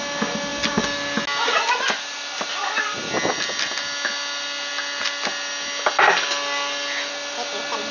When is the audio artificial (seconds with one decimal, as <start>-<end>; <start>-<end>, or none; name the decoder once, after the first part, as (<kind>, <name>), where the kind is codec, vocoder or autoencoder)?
none